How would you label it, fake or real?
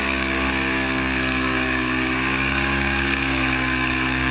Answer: fake